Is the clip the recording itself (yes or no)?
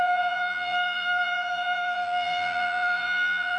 no